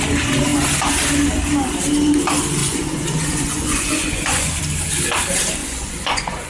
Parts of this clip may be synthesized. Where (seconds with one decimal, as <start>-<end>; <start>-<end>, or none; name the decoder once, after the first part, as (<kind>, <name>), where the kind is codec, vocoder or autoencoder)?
2.6-4.6 (vocoder, Vocos); 5.6-6.5